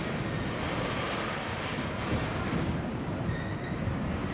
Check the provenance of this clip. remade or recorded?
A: recorded